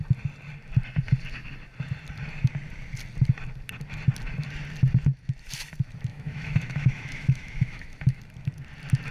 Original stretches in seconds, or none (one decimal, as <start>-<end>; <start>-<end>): 0.0-6.1; 8.2-9.1